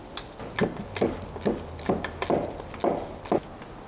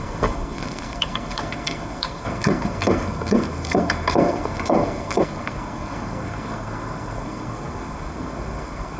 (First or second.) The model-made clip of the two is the second